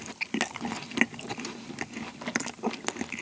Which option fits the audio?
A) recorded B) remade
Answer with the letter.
A